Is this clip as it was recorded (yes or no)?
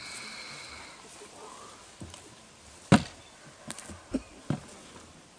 yes